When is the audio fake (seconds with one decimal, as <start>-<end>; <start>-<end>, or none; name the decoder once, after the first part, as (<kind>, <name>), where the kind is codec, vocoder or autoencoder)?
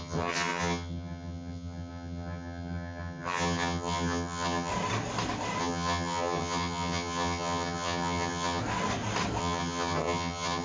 0.0-4.7 (vocoder, HiFi-GAN); 5.6-8.6; 9.4-10.6